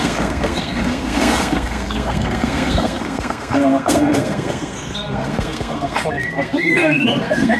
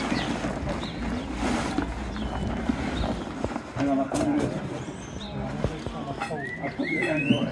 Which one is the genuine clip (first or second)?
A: second